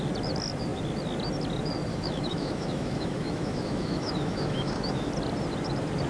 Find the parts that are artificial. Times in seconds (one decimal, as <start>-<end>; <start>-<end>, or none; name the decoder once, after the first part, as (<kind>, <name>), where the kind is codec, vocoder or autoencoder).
1.9-5.1 (autoencoder, DAC-VAE)